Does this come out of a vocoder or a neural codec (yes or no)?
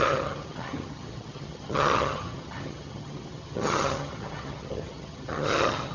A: yes